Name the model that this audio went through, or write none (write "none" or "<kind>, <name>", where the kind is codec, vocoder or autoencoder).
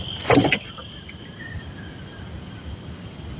none